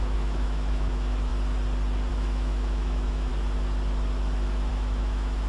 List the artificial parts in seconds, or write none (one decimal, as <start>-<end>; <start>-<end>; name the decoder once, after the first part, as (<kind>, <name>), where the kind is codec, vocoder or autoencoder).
0.0-1.3 (autoencoder, DAC-VAE); 2.1-3.3; 4.7-5.5